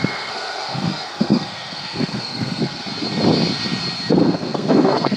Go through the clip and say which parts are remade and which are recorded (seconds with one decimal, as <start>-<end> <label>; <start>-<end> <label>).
0.0-2.8 remade; 2.8-4.1 recorded; 4.1-5.2 remade